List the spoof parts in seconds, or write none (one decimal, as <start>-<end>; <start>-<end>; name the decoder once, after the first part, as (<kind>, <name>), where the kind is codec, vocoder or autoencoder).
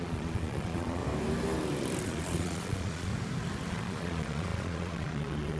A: 0.0-1.0 (vocoder, Vocos); 2.0-3.1; 3.7-5.6